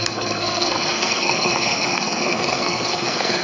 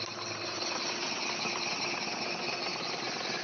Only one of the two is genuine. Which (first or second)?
second